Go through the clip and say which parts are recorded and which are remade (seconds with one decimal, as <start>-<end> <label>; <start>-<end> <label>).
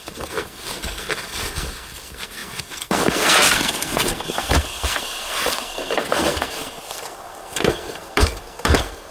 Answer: 0.0-9.1 remade